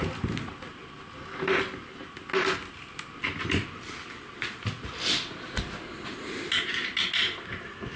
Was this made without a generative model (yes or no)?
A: yes